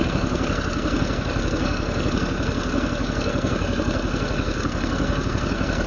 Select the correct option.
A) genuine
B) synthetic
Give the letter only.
B